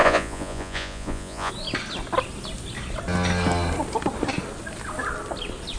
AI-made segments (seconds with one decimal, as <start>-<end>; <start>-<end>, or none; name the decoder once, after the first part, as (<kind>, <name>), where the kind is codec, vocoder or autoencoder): 0.0-1.5 (vocoder, Vocos)

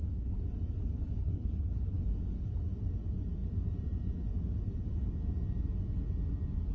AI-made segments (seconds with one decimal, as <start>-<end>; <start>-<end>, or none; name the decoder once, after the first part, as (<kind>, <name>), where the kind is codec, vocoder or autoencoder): 1.2-2.0 (codec, HILCodec)

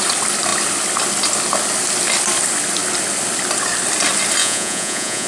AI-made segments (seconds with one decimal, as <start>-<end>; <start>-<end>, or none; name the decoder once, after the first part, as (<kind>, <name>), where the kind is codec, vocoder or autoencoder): 4.4-5.3 (vocoder, Vocos)